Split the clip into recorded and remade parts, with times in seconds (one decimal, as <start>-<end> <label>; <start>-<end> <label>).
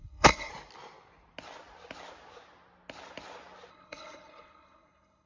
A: 0.0-0.5 remade; 0.5-3.7 recorded; 3.7-5.3 remade